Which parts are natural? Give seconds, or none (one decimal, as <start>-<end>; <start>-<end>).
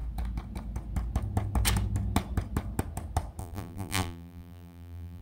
0.0-3.4